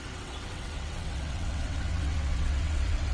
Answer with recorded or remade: remade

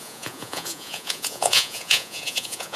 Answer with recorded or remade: remade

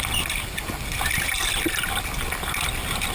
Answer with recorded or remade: recorded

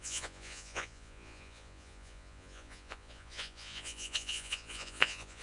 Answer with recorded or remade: remade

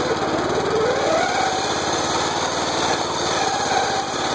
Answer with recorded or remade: recorded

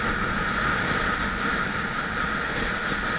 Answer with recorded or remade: recorded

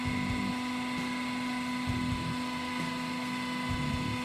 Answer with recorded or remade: recorded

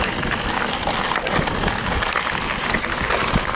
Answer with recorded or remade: recorded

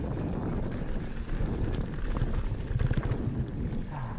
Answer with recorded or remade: recorded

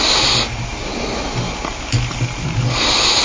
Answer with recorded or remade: recorded